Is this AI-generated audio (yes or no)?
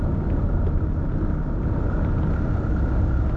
no